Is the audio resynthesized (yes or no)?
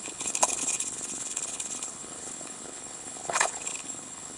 yes